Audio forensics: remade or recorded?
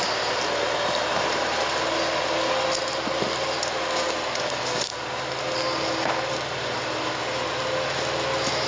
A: recorded